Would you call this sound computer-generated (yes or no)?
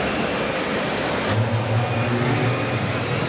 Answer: no